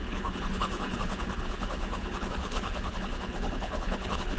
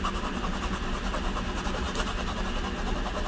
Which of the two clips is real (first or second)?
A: second